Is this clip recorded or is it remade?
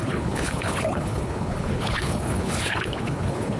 remade